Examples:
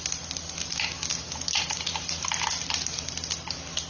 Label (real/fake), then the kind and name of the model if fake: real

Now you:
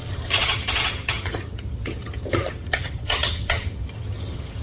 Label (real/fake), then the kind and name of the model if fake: fake, vocoder, HiFi-GAN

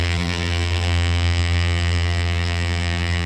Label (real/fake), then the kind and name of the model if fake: fake, vocoder, BigVGAN v2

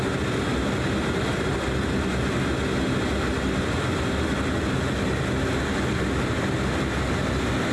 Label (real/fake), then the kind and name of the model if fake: real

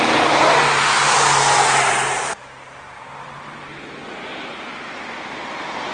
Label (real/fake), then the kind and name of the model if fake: real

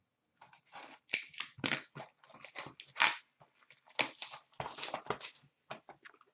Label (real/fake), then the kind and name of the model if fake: real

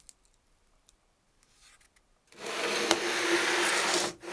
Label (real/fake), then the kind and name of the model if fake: real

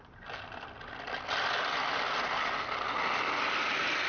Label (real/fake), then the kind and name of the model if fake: real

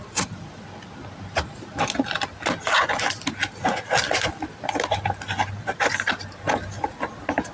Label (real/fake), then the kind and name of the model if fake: real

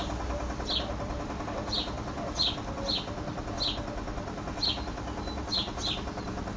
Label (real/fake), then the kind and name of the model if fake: real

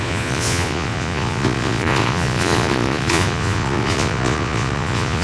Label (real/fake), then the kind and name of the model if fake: fake, vocoder, Vocos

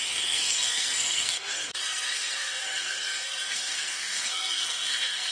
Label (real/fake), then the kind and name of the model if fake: fake, codec, SNAC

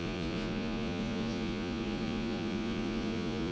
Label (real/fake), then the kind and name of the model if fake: fake, vocoder, Vocos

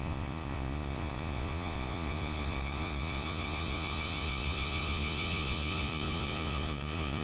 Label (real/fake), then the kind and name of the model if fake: fake, vocoder, Vocos